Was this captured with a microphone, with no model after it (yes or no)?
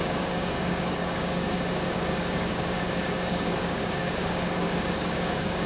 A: no